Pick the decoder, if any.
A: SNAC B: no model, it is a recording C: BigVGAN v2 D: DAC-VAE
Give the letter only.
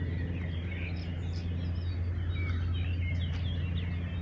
B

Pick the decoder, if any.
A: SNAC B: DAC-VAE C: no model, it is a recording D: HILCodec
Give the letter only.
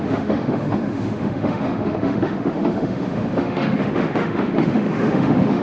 B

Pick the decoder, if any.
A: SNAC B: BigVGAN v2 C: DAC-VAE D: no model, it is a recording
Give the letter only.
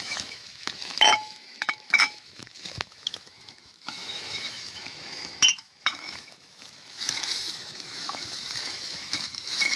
C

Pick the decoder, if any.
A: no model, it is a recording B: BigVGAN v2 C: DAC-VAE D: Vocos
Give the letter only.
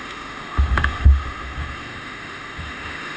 C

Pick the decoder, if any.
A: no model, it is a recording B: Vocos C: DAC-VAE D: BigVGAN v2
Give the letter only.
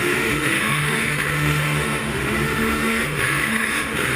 C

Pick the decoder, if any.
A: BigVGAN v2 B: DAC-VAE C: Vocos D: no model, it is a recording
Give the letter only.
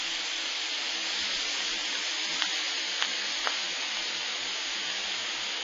D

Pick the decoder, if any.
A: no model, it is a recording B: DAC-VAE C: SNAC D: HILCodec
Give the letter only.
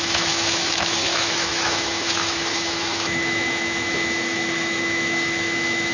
B